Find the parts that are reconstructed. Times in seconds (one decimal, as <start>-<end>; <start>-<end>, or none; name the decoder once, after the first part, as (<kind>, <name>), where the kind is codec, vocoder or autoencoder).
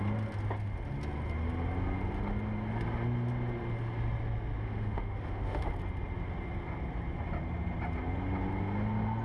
4.6-5.7 (autoencoder, DAC-VAE)